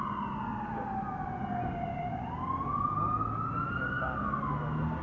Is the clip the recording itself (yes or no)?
yes